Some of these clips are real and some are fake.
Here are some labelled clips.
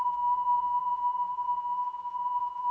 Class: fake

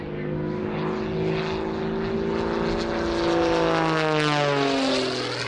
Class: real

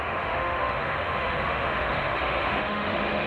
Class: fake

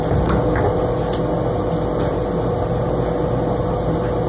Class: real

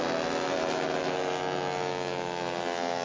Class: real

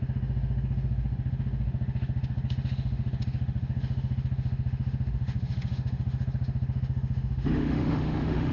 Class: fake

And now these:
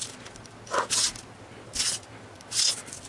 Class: real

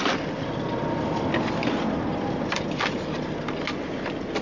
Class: real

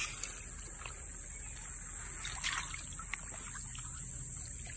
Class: real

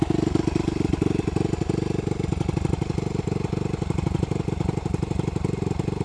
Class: real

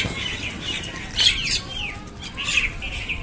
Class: real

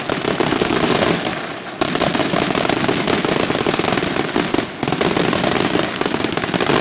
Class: real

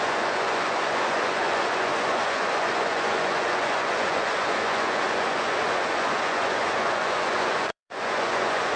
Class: fake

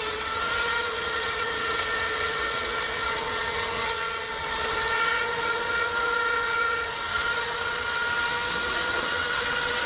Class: fake